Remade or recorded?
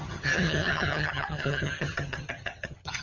remade